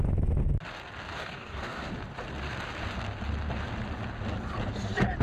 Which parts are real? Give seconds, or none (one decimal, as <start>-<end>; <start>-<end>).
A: 0.0-1.1; 1.9-5.2

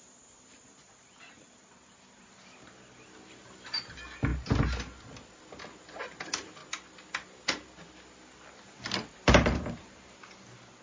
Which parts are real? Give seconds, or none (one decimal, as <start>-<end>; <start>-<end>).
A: 4.3-6.0; 6.6-9.8